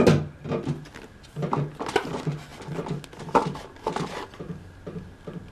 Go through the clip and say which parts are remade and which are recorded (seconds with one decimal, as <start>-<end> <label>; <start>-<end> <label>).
0.0-5.5 recorded